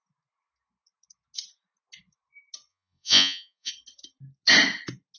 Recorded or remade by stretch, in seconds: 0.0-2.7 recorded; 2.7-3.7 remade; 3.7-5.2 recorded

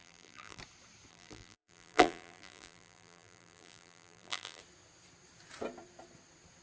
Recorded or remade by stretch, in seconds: 0.0-0.6 remade; 0.6-1.1 recorded; 1.1-4.6 remade; 4.6-6.6 recorded

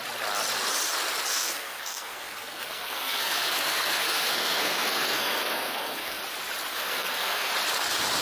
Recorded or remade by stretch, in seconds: 0.0-1.3 recorded; 1.3-6.2 remade; 6.2-6.7 recorded; 6.7-7.5 remade; 7.5-8.2 recorded

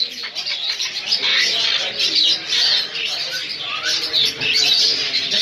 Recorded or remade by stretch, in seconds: 0.0-1.3 remade; 1.3-2.0 recorded; 2.0-2.7 remade; 2.7-4.3 recorded; 4.3-5.4 remade

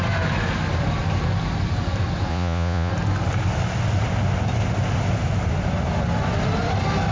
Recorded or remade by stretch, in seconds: 0.0-2.3 recorded; 2.3-2.9 remade; 2.9-7.1 recorded

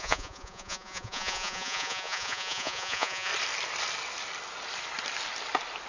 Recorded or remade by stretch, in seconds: 0.0-3.3 remade; 3.3-5.9 recorded